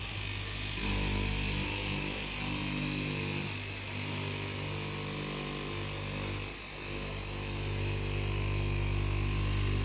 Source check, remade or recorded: recorded